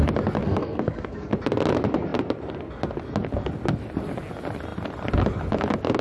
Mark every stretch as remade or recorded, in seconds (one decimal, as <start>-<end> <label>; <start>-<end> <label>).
0.0-0.4 recorded; 0.4-1.3 remade; 1.3-6.0 recorded